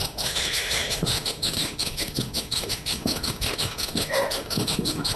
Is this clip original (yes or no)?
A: no